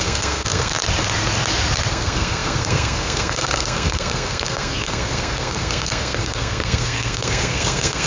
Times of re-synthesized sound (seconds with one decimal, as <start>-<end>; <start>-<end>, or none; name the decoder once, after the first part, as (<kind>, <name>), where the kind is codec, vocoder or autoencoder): 0.0-0.7 (codec, SNAC); 1.9-8.1